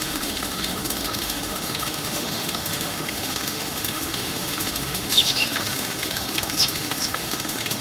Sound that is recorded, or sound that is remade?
remade